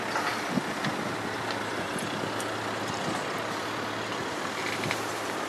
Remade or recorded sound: recorded